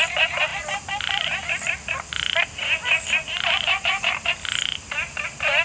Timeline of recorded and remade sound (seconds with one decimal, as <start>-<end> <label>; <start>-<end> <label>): 0.0-5.6 recorded